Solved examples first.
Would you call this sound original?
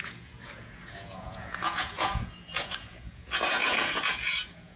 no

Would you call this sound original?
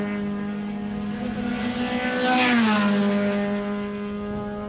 yes